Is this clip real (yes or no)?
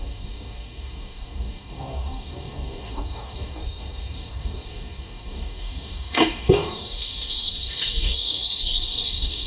no